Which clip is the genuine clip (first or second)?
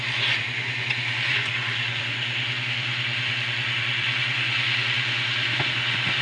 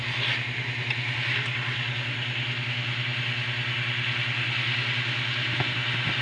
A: second